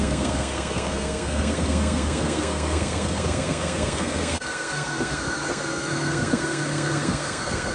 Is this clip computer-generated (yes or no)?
yes